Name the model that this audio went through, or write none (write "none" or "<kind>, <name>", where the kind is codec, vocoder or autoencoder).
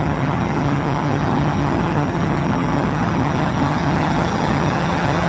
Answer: vocoder, HiFi-GAN